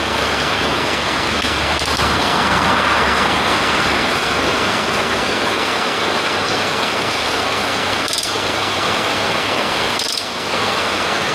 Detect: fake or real fake